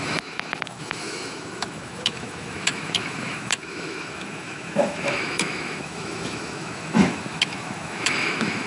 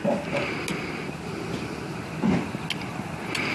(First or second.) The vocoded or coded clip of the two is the first